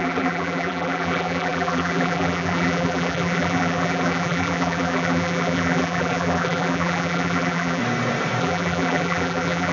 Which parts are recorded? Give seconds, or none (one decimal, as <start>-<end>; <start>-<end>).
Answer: 7.8-8.4